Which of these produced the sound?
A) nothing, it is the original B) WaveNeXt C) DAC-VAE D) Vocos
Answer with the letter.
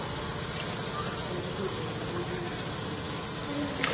A